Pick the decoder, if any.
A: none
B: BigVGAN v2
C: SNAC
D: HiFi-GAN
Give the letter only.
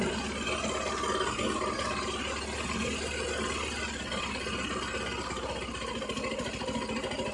A